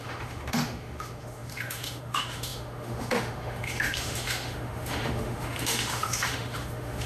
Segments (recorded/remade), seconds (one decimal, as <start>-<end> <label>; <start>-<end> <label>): 0.0-7.1 remade